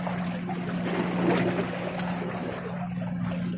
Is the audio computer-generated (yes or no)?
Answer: no